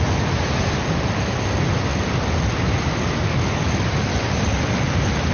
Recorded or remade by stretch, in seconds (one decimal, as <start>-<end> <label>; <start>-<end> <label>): 0.0-5.3 recorded